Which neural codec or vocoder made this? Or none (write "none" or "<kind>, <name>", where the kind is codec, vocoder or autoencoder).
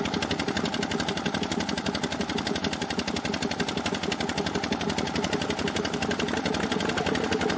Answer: none